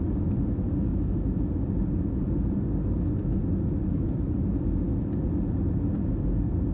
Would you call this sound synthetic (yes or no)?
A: no